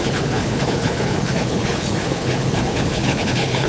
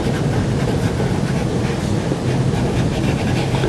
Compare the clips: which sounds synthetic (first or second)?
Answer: first